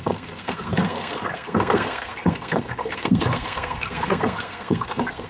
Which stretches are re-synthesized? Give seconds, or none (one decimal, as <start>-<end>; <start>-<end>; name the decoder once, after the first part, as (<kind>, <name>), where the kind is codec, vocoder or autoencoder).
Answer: 0.0-5.3 (codec, SNAC)